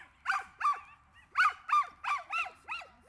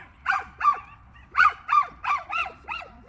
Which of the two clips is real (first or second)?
first